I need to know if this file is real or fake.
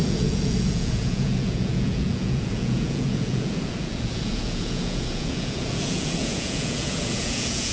fake